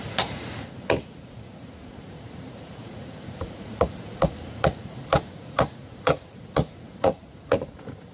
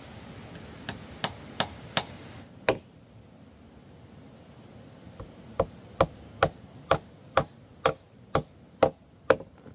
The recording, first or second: second